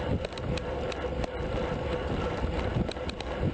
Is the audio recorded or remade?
recorded